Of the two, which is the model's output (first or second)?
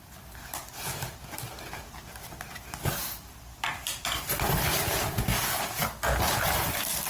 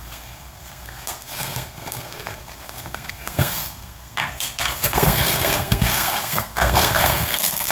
second